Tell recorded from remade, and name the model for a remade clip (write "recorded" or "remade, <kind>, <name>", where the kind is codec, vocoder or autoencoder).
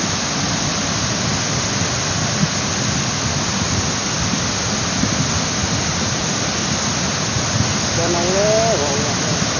recorded